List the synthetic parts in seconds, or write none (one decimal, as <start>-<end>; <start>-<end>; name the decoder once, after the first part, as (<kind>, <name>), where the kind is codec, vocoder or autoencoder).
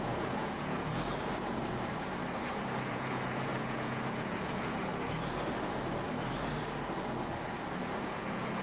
0.0-0.9 (vocoder, Vocos); 2.9-4.9; 7.8-8.6